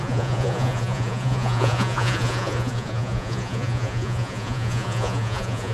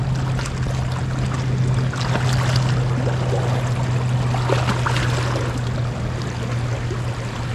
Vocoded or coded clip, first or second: first